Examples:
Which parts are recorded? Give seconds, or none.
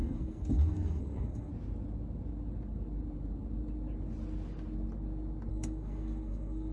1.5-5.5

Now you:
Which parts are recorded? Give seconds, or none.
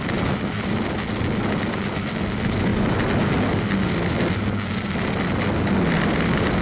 0.0-6.6